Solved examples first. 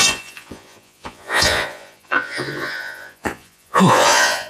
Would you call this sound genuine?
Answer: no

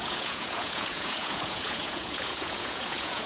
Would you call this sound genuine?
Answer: no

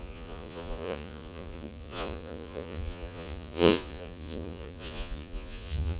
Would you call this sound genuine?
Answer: no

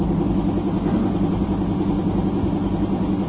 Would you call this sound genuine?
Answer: yes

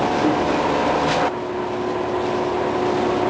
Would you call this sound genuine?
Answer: yes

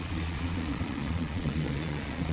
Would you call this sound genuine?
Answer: no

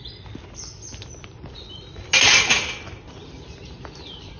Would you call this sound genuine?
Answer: yes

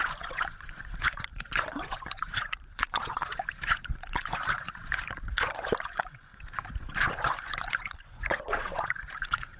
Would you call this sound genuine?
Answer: no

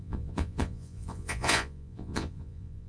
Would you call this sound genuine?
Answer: no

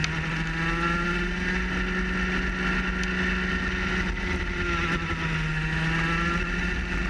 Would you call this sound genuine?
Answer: yes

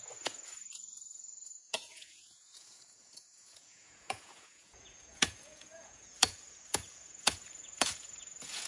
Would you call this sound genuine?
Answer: no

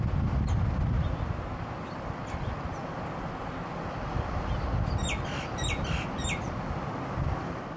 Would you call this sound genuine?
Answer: yes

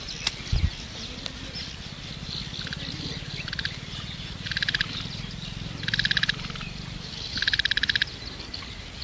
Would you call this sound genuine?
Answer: yes